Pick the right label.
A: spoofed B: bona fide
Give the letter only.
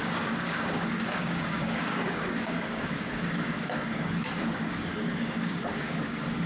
A